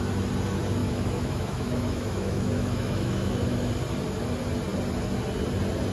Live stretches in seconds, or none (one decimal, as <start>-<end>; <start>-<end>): 0.0-0.8; 3.7-5.9